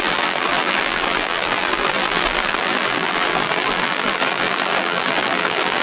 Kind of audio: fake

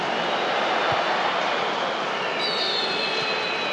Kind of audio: real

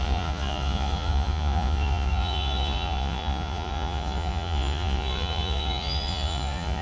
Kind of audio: fake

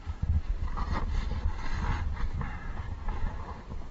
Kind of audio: real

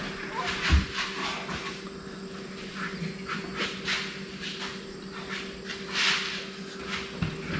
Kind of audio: real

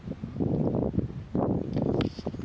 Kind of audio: real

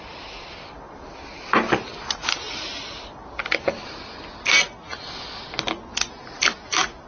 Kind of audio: real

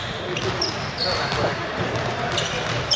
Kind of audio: real